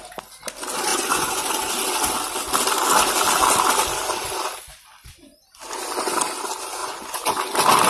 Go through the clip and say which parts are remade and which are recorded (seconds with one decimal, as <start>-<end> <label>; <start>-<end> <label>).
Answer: 0.0-0.9 recorded; 0.9-1.7 remade; 1.7-6.8 recorded; 6.8-7.4 remade; 7.4-7.9 recorded